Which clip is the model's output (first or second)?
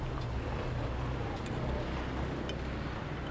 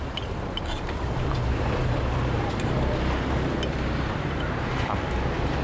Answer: second